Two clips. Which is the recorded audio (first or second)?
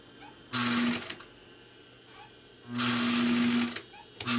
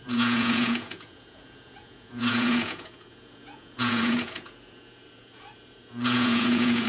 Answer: first